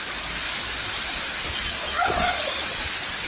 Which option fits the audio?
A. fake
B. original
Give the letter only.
B